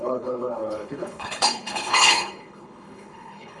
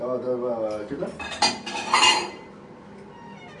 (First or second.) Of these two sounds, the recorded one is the second